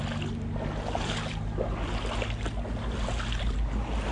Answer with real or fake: real